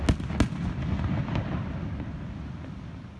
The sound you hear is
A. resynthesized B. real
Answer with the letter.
B